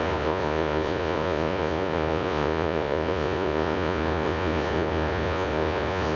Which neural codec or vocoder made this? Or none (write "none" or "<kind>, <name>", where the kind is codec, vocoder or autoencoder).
vocoder, Vocos